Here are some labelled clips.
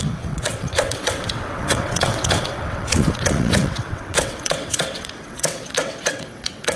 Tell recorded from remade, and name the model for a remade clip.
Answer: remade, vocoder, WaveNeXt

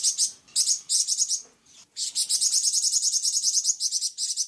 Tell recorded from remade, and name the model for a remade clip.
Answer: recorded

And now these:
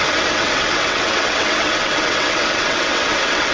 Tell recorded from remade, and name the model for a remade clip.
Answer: remade, vocoder, WaveNeXt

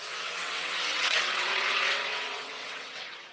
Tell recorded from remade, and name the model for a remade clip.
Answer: remade, vocoder, WaveNeXt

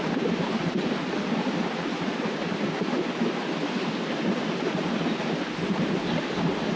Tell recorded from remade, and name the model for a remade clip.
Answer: recorded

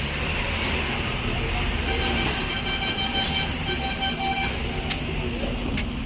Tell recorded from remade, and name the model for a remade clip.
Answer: recorded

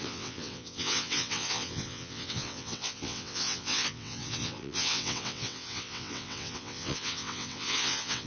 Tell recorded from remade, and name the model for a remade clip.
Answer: remade, vocoder, WaveNeXt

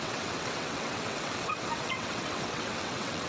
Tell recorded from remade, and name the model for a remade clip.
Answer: remade, vocoder, WaveNeXt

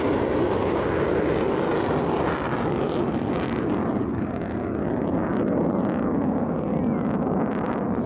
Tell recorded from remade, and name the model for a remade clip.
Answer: recorded